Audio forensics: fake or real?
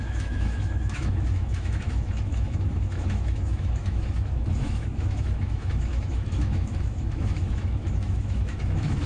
fake